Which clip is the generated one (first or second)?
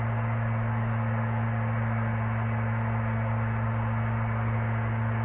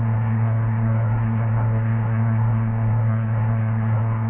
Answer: second